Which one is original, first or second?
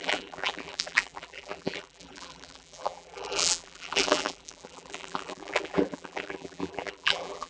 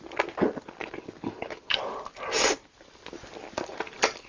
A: second